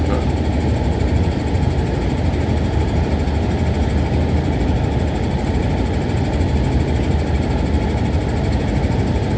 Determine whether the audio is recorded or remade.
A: recorded